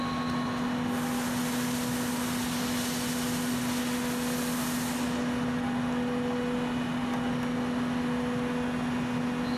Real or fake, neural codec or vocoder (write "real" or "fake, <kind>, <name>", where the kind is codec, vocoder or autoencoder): real